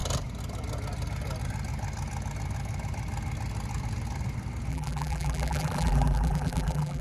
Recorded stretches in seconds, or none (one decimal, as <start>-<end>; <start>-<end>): 0.0-4.7